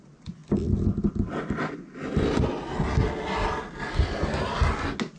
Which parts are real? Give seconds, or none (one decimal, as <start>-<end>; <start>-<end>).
0.0-5.2